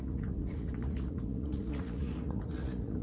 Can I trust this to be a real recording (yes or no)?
no